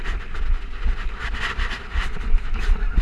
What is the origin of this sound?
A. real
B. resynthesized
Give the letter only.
A